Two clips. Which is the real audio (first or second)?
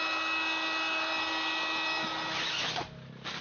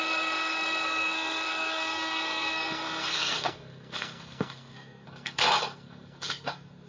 first